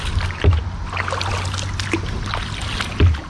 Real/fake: real